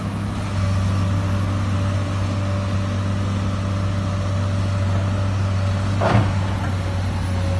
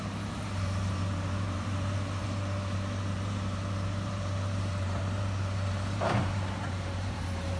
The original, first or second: first